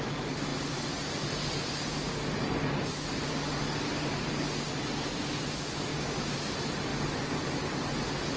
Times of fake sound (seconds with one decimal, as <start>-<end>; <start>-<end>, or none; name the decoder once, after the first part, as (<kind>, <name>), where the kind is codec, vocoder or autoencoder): 5.9-6.5 (codec, DAC)